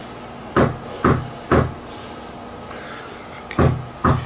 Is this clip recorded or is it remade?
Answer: recorded